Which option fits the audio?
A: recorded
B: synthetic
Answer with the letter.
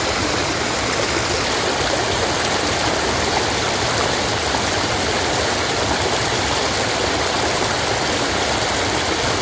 A